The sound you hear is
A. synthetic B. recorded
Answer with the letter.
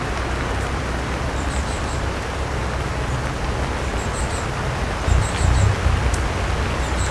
B